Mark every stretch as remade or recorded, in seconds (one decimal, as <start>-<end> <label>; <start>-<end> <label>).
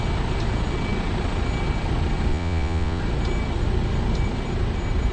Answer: 0.0-2.3 recorded; 2.3-3.0 remade; 3.0-5.1 recorded